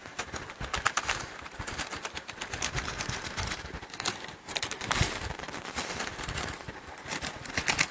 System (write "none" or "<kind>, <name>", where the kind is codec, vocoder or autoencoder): vocoder, BigVGAN v2